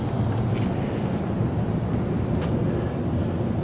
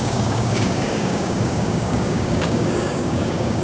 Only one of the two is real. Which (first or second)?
first